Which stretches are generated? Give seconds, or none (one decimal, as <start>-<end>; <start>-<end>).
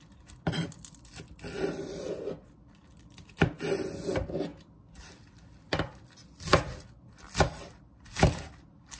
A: none